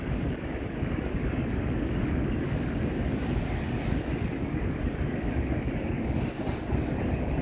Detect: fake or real fake